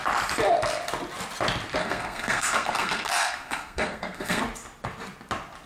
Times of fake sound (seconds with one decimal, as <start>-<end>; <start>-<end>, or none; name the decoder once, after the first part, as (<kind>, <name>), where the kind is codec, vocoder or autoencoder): 1.8-4.4 (codec, SNAC)